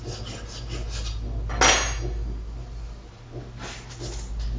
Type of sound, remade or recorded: recorded